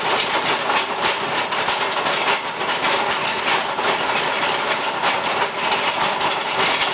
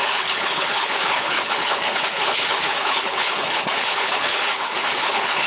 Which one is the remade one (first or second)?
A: second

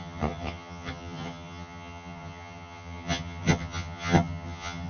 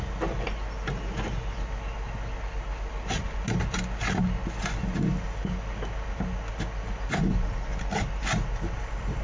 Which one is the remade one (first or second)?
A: first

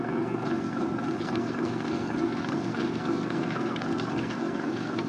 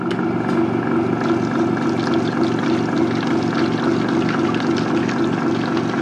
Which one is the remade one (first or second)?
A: first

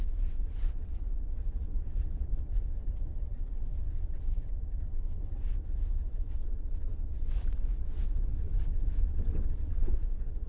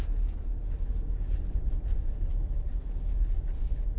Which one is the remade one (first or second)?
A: first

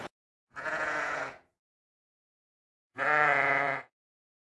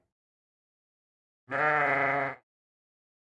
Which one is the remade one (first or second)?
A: first